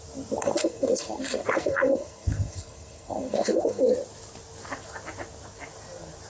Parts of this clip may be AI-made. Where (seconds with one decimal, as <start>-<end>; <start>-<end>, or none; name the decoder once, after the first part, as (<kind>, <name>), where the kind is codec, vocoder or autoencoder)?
0.4-3.8 (codec, SNAC)